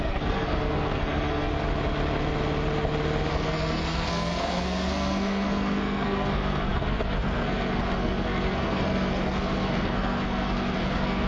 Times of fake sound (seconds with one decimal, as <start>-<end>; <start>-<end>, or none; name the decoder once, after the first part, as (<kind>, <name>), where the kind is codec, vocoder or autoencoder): 0.0-1.5 (codec, SNAC); 3.3-11.3